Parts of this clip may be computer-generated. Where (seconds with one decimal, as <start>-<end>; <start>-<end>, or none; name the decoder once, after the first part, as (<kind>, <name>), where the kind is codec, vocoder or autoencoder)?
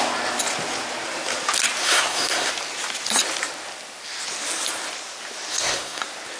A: 1.8-2.5 (codec, SNAC); 5.5-6.0